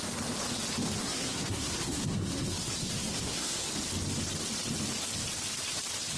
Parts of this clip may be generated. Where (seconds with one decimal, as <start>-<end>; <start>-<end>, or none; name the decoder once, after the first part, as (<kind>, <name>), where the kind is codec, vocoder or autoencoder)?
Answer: 1.0-3.7 (codec, SNAC)